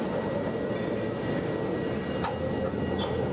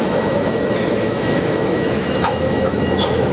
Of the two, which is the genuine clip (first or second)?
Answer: first